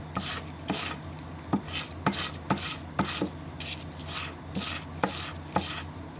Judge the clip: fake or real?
real